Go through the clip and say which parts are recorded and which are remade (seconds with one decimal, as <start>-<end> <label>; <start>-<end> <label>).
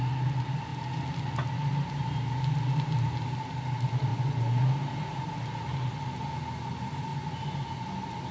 0.0-4.1 recorded; 4.1-4.6 remade; 4.6-7.1 recorded; 7.1-7.9 remade; 7.9-8.3 recorded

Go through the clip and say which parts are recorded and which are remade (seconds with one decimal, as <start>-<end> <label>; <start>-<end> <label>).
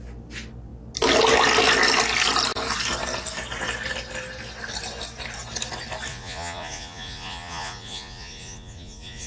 0.0-6.1 recorded; 6.1-9.3 remade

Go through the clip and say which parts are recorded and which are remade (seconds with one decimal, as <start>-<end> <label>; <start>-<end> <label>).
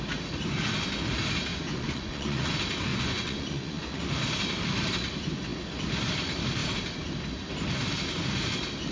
0.0-1.5 recorded; 1.5-2.5 remade; 2.5-2.9 recorded; 2.9-4.0 remade; 4.0-8.9 recorded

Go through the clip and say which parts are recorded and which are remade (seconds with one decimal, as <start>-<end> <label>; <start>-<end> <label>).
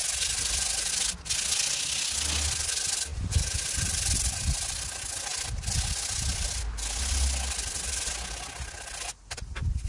0.0-9.9 recorded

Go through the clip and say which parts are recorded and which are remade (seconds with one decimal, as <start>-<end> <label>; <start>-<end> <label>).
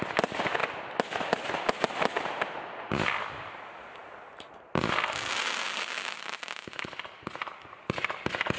0.0-8.6 recorded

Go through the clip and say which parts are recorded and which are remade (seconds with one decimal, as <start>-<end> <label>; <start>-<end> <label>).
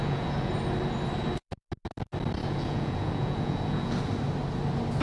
0.0-0.5 remade; 0.5-2.4 recorded; 2.4-4.1 remade; 4.1-5.0 recorded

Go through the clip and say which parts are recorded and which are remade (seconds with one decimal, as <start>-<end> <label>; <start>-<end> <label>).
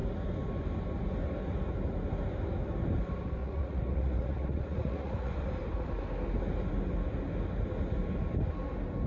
0.0-3.4 recorded; 3.4-5.3 remade; 5.3-9.1 recorded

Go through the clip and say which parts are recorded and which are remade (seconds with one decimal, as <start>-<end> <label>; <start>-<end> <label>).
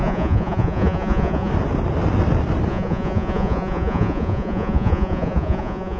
0.0-1.5 remade; 1.5-2.7 recorded; 2.7-6.0 remade